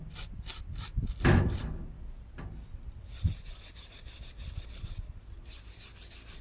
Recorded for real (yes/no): yes